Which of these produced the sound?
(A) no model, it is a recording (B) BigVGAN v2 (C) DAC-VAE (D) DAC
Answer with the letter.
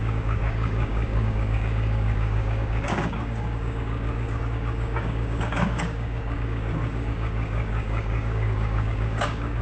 D